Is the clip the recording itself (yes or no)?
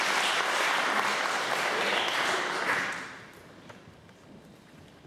yes